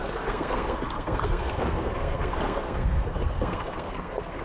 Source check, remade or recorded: remade